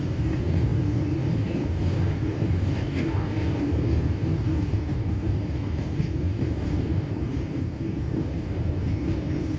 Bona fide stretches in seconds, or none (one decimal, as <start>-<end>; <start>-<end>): none